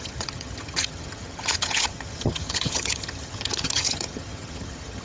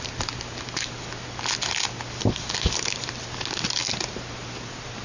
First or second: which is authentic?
second